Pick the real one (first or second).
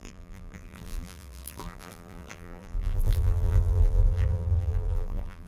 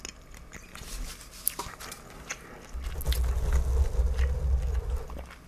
second